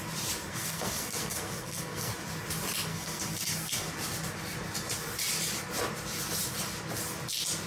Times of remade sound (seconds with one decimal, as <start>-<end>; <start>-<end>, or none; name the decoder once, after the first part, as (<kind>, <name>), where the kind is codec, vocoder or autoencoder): 0.4-2.1 (codec, SNAC); 2.9-3.9